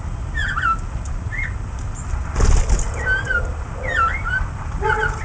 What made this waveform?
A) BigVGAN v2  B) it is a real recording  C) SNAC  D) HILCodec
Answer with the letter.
B